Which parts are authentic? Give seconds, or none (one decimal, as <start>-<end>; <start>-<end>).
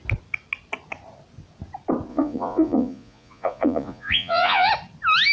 0.0-2.1; 4.7-5.3